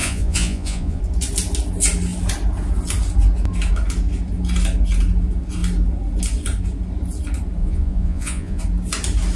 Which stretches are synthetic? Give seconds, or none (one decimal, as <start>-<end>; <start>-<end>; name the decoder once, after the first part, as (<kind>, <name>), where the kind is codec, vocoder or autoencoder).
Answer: 0.0-1.0 (vocoder, Vocos); 7.6-8.6